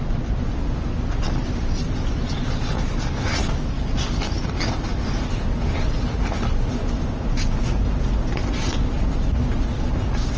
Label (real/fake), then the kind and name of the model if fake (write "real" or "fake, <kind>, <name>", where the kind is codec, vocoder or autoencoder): real